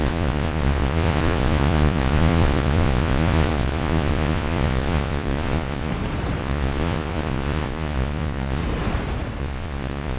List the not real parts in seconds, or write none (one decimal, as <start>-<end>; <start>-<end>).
0.0-5.9; 6.4-8.6; 9.4-10.2